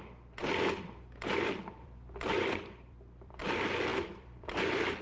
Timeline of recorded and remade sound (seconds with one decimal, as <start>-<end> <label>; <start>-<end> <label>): 0.0-0.4 recorded; 0.4-3.4 remade; 3.4-3.9 recorded; 3.9-5.0 remade

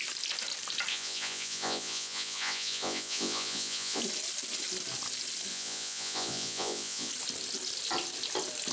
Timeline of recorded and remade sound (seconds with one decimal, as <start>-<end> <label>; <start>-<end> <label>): 0.0-0.9 recorded; 0.9-4.0 remade; 4.0-5.5 recorded; 5.5-7.1 remade; 7.1-8.7 recorded

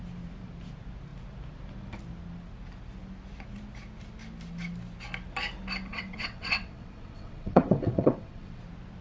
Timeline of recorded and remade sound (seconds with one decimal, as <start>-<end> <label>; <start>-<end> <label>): 0.0-5.9 recorded; 5.9-8.6 remade; 8.6-9.0 recorded

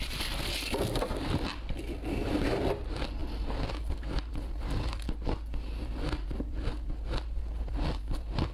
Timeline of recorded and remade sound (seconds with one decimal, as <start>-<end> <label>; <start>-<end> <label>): 0.0-8.5 recorded

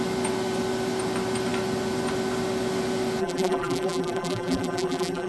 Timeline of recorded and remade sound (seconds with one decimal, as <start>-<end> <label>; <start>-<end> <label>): 0.0-3.2 recorded; 3.2-5.3 remade

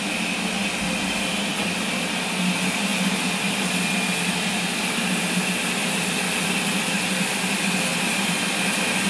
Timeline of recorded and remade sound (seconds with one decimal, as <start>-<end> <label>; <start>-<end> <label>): 0.0-9.1 recorded